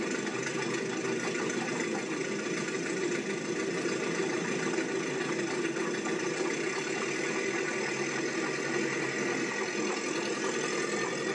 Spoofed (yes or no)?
no